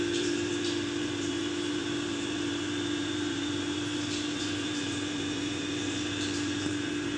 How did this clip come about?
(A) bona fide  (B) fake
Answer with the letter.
B